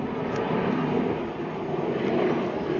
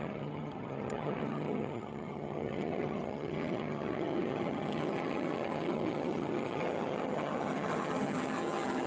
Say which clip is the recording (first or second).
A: first